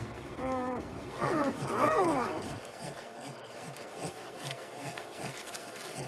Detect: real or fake fake